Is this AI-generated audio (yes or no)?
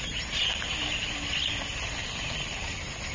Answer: no